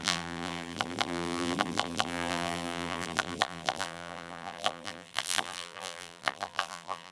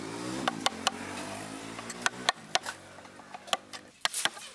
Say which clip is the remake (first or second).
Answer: first